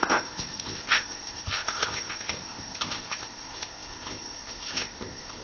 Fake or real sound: fake